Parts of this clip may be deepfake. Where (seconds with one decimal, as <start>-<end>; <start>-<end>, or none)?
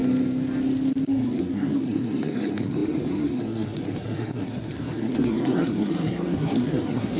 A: 1.1-7.2